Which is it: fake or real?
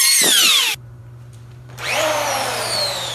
fake